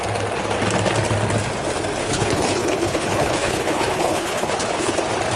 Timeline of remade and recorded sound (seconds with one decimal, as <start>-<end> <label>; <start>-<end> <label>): 0.0-2.0 recorded; 2.0-5.0 remade; 5.0-5.4 recorded

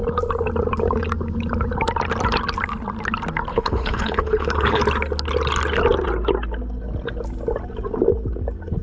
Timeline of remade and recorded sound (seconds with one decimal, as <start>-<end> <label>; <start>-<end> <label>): 0.0-3.5 recorded; 3.5-4.8 remade; 4.8-8.8 recorded

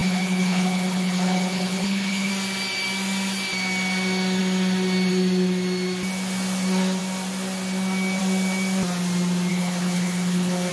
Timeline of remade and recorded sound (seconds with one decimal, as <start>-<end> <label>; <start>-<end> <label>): 0.0-2.3 remade; 2.3-9.5 recorded; 9.5-10.7 remade